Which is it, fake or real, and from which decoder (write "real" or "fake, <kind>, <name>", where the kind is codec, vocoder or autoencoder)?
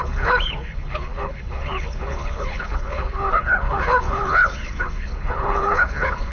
fake, codec, HILCodec